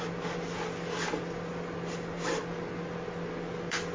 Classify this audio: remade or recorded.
recorded